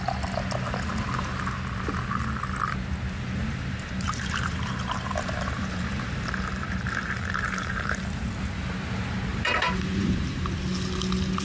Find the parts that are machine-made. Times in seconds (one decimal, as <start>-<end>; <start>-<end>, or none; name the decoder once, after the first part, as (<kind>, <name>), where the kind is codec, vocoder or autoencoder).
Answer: 3.4-8.0 (vocoder, BigVGAN v2); 9.3-10.5